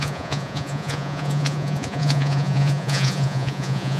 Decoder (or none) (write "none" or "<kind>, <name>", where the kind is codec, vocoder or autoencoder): vocoder, Vocos